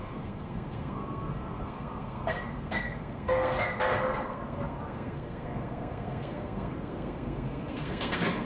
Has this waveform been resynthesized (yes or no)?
yes